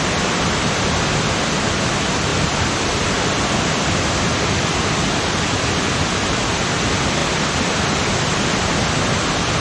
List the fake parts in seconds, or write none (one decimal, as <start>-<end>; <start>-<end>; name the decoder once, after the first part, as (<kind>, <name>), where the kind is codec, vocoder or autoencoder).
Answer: 2.3-2.9 (vocoder, BigVGAN v2); 7.2-8.5